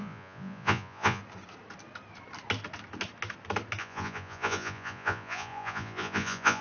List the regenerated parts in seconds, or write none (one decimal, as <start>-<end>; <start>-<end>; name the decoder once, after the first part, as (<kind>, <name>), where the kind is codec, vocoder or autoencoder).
0.0-1.2 (vocoder, Vocos); 3.8-6.6